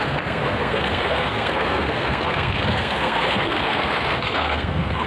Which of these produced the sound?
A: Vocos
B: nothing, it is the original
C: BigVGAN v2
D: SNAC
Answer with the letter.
D